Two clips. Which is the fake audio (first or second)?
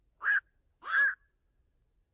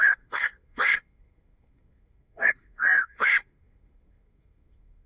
second